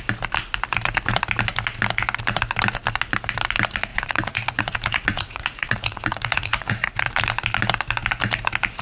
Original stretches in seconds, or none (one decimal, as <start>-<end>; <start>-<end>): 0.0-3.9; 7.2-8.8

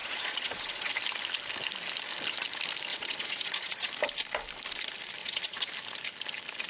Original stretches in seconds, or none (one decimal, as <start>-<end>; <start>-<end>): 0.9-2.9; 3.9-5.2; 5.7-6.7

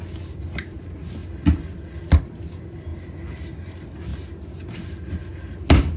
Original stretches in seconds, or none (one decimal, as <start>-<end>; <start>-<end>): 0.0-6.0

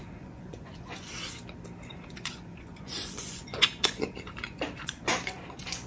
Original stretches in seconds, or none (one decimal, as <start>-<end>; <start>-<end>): 1.1-1.9

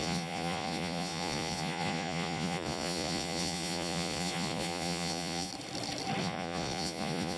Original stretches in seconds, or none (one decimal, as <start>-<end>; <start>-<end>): 5.5-6.2

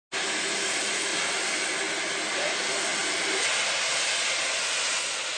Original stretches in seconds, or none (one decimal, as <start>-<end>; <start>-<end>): 0.0-5.4

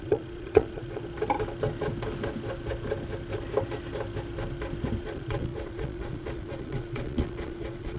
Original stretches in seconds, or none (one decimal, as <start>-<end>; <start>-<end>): 1.0-5.0

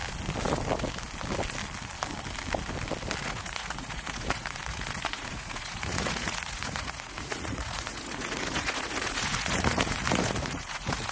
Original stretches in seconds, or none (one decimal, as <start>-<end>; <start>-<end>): 0.0-3.2